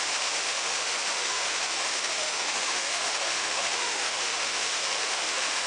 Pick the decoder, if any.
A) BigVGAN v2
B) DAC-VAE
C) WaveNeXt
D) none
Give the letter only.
B